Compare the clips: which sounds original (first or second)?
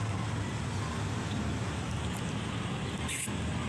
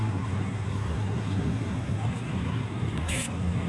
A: first